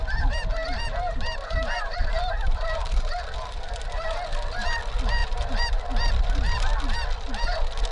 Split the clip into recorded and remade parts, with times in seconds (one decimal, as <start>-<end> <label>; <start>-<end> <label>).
0.0-3.2 remade; 3.2-5.2 recorded; 5.2-5.8 remade; 5.8-7.9 recorded